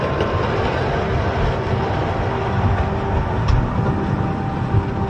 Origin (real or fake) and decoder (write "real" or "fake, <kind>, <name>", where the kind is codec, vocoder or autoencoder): real